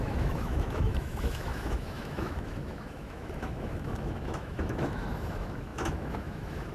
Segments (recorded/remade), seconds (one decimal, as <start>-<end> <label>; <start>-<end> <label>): 0.0-6.7 remade